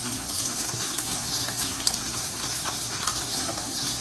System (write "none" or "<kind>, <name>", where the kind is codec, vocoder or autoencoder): codec, SNAC